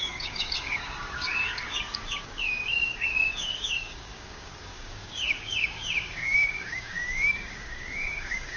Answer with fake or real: fake